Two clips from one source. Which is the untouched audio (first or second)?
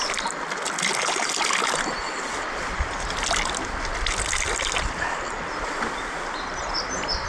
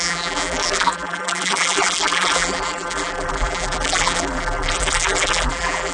first